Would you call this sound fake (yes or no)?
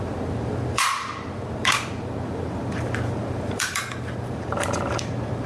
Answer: yes